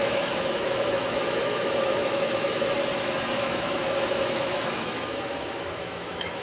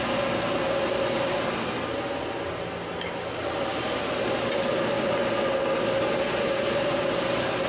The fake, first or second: first